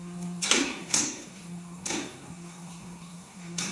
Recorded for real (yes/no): no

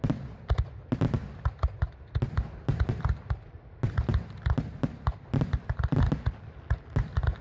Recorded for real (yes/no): yes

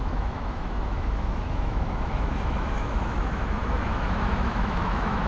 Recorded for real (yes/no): no